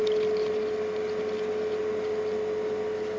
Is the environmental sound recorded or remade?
recorded